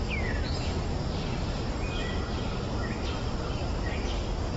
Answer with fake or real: real